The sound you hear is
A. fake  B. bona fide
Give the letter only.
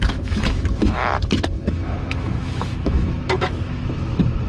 A